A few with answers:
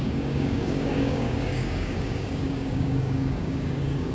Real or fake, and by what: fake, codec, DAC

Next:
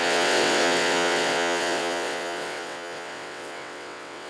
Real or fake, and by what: fake, vocoder, WaveNeXt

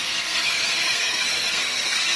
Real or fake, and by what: fake, codec, SNAC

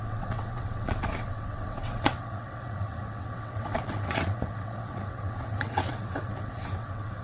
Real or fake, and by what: fake, vocoder, WaveNeXt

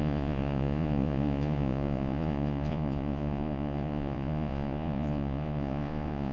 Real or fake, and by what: fake, vocoder, Vocos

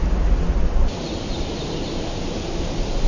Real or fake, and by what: real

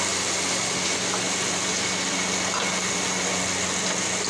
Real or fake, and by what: real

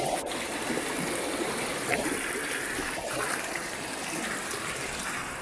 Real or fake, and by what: real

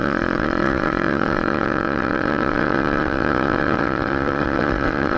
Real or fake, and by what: fake, vocoder, WaveNeXt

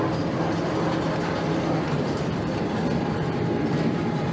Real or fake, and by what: real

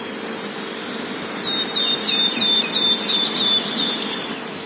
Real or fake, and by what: real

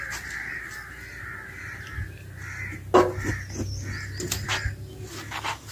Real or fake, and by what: real